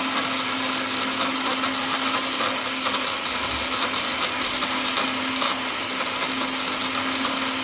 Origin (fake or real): real